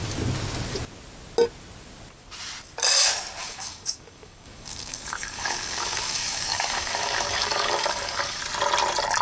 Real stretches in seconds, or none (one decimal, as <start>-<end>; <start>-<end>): 0.0-3.4; 8.4-9.2